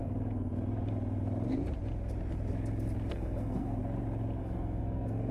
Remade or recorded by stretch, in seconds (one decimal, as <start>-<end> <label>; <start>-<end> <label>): 0.0-0.5 remade; 0.5-3.1 recorded; 3.1-3.8 remade; 3.8-4.4 recorded; 4.4-5.3 remade